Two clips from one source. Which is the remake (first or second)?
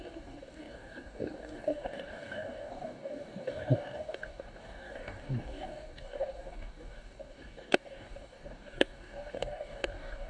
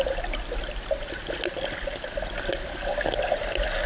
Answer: first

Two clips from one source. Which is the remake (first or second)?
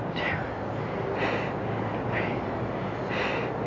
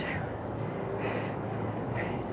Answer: second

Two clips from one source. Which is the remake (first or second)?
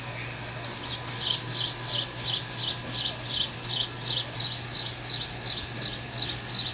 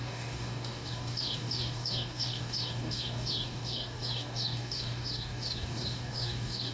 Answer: second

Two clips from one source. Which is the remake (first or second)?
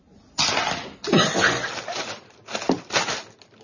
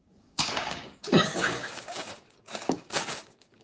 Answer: second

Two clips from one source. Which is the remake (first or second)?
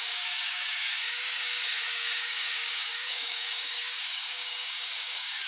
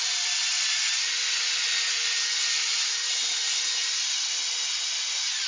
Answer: first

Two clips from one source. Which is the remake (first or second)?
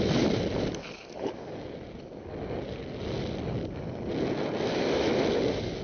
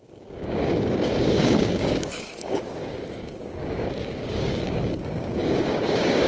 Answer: second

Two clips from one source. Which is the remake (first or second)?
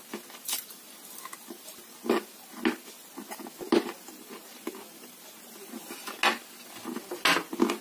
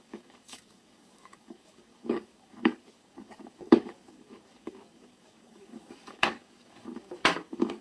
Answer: second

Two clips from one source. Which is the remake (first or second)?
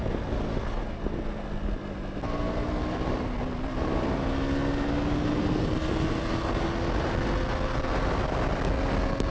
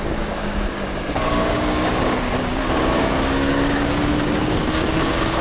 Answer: second